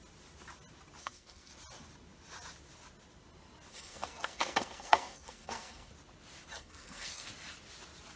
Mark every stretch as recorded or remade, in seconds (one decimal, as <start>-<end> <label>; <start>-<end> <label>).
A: 0.0-1.0 recorded; 1.0-1.5 remade; 1.5-3.7 recorded; 3.7-5.9 remade; 5.9-6.5 recorded; 6.5-7.3 remade; 7.3-8.2 recorded